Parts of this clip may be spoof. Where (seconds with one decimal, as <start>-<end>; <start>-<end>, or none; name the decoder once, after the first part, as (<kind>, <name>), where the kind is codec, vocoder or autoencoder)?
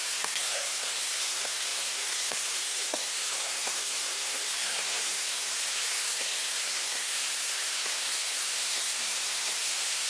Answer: 0.0-10.1 (codec, SNAC)